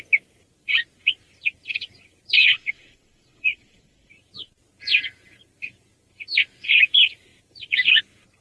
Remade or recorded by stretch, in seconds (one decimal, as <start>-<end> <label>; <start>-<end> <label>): 0.0-2.4 recorded; 2.4-4.1 remade; 4.1-8.4 recorded